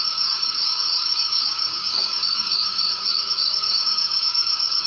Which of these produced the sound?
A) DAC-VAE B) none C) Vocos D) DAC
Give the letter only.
D